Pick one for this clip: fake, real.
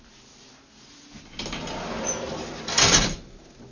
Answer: real